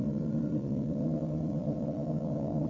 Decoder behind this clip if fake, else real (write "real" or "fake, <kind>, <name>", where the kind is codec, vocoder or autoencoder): fake, vocoder, Vocos